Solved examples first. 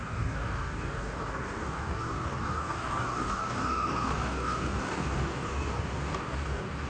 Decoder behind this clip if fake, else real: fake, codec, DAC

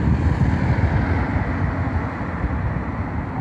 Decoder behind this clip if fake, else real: real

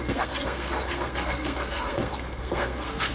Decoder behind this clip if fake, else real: fake, codec, SNAC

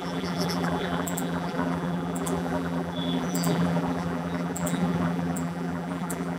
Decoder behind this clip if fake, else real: fake, vocoder, BigVGAN v2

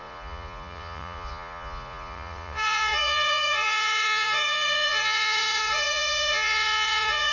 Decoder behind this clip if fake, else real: fake, vocoder, Vocos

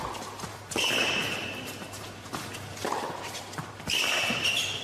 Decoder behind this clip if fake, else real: real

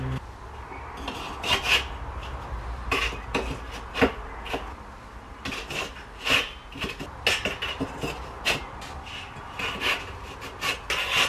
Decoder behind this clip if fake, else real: real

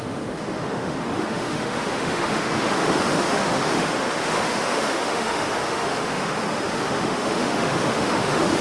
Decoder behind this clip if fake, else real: fake, autoencoder, DAC-VAE